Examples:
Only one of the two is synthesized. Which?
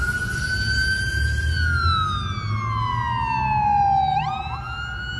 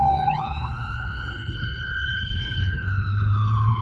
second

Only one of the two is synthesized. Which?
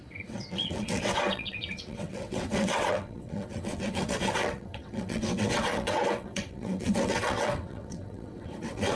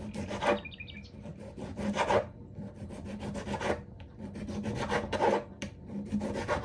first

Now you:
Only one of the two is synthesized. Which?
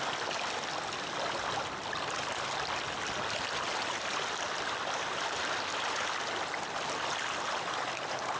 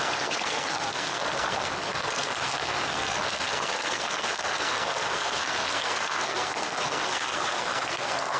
second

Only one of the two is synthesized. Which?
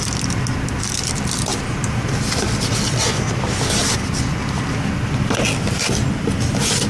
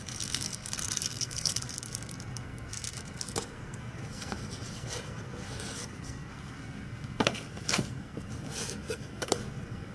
second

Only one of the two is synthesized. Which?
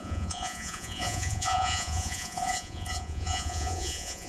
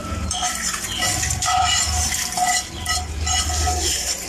first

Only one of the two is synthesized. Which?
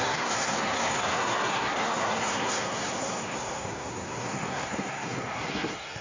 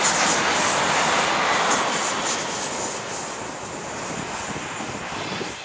first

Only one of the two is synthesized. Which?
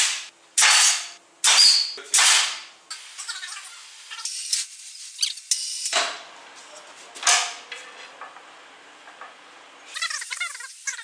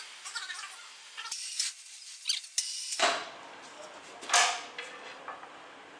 second